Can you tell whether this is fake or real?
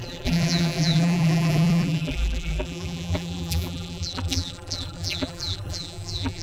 fake